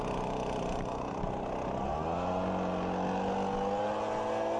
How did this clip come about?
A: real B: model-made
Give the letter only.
A